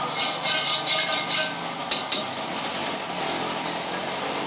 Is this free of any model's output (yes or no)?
yes